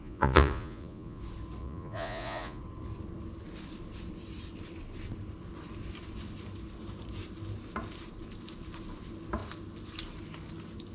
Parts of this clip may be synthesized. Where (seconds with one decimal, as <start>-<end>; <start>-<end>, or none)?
0.0-1.2; 1.6-2.6